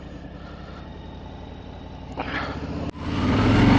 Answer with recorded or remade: recorded